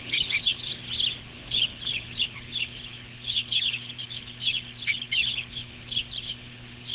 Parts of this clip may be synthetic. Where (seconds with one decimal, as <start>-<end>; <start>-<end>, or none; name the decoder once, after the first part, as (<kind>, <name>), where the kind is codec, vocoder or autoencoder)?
0.0-0.7 (codec, HILCodec); 1.2-6.9